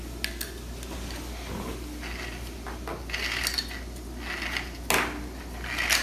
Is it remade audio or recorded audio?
recorded